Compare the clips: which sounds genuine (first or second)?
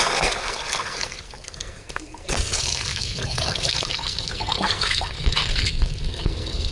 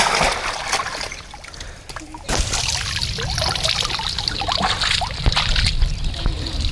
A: second